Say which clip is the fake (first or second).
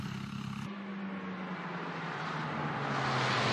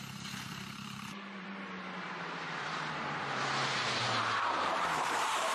second